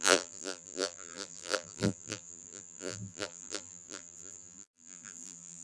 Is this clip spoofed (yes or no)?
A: yes